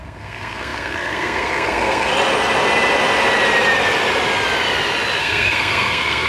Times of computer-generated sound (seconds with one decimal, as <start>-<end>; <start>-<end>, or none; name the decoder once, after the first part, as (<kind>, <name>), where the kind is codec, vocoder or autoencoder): 0.0-2.1 (codec, SNAC); 5.2-6.3

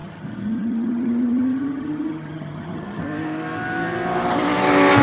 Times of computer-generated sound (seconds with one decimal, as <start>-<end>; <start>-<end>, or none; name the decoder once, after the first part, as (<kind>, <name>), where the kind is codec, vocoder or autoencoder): 0.0-3.0 (vocoder, HiFi-GAN)

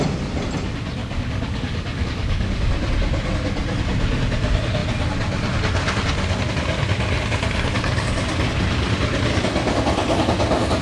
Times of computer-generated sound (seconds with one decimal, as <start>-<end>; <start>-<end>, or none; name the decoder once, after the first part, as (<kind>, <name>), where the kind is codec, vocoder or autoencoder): 1.0-2.7 (codec, DAC)

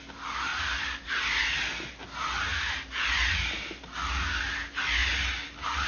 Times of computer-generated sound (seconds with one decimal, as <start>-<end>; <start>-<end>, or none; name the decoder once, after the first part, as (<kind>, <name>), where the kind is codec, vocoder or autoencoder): none